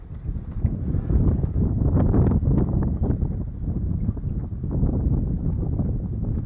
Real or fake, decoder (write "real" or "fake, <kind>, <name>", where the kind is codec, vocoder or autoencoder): real